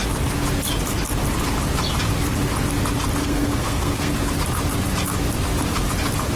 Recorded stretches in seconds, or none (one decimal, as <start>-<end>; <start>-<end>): 0.0-3.2; 4.1-6.4